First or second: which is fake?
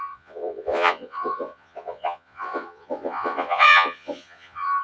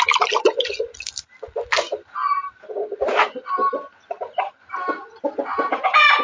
first